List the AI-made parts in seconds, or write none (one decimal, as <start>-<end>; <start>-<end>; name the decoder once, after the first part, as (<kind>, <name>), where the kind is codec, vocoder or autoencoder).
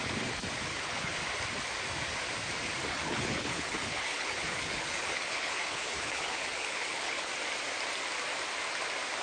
0.7-1.2 (codec, HILCodec); 2.9-7.3